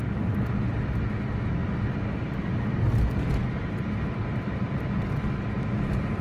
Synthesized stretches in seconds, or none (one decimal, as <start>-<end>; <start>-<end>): 1.6-2.8